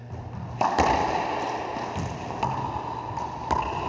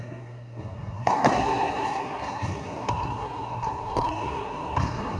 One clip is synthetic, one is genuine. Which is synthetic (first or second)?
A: second